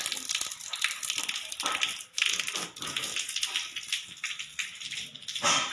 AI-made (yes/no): no